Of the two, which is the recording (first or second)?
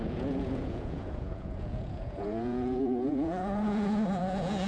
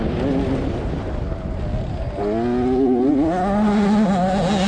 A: second